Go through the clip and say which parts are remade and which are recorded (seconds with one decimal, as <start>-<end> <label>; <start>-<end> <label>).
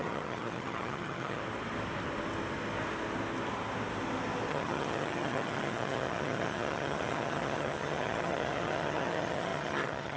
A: 0.0-1.4 remade; 1.4-4.5 recorded; 4.5-10.2 remade